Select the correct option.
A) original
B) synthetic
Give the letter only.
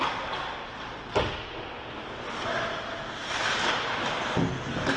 A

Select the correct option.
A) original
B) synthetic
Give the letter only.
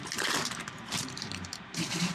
B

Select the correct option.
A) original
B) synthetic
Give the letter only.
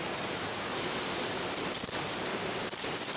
A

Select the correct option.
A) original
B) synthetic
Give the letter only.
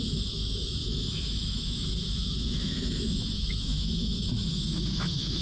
B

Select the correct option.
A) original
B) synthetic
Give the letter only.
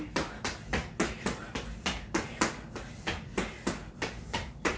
A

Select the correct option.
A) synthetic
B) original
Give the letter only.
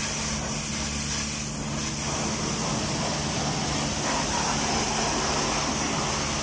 B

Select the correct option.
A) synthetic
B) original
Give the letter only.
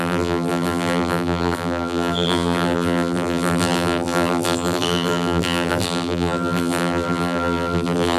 A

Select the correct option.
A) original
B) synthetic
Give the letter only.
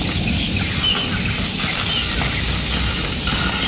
A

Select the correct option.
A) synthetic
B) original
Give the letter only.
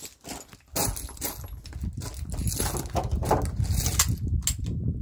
B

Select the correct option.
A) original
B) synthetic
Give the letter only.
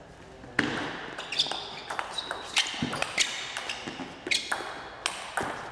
A